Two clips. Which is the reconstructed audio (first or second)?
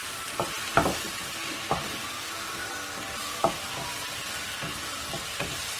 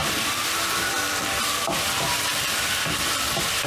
second